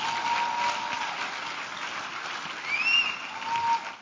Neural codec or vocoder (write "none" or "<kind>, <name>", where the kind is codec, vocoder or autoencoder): none